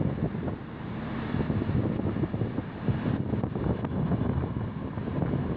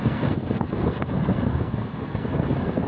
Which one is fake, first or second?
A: second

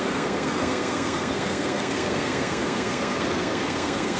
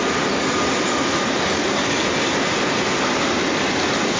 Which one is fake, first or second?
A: first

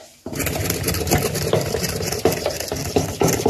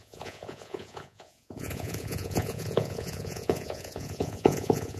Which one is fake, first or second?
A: second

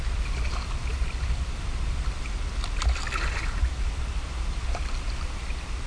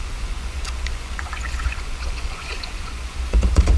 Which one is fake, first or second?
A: second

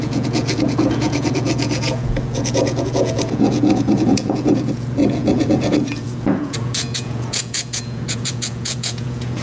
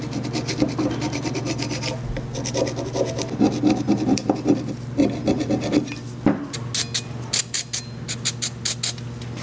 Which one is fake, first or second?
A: first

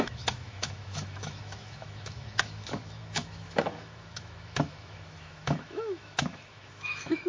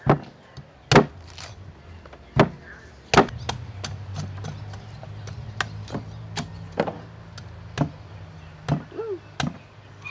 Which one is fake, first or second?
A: first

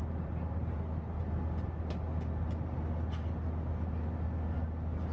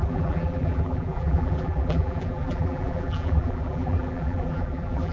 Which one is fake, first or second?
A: second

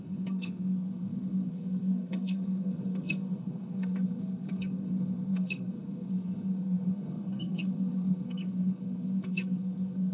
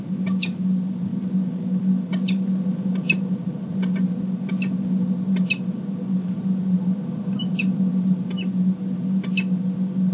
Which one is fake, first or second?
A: first